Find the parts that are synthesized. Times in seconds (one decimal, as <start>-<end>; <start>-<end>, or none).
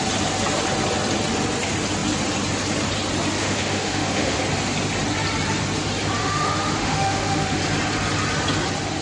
3.4-4.4; 6.2-7.6